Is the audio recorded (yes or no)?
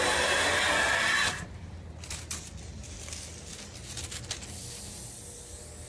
yes